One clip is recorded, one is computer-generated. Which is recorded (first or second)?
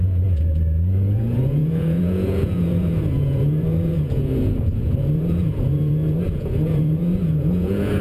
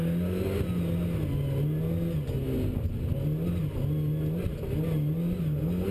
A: second